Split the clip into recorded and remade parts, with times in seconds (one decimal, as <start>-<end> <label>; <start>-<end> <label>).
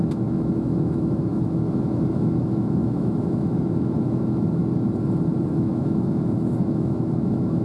0.0-4.6 remade; 4.6-5.5 recorded; 5.5-7.6 remade